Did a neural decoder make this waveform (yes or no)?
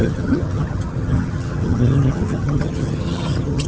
yes